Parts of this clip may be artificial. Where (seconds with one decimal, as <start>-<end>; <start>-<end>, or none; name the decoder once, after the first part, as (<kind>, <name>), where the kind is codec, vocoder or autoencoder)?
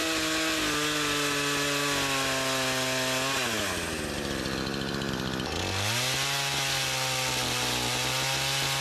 none